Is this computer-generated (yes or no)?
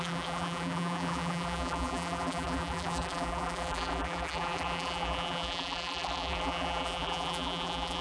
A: yes